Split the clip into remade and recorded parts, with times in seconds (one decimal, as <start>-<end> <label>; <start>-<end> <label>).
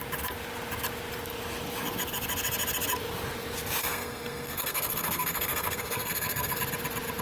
0.0-3.8 recorded; 3.8-6.6 remade; 6.6-7.2 recorded